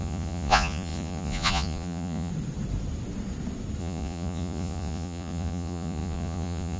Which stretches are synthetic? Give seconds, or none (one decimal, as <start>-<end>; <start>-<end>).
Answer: 0.0-2.3; 3.8-6.8